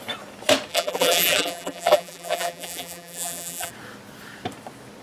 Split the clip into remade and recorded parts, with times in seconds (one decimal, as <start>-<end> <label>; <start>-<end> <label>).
0.0-0.7 recorded; 0.7-3.7 remade; 3.7-5.0 recorded